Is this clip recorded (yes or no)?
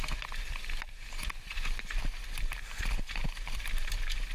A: yes